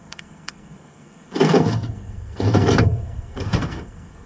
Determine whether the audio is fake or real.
fake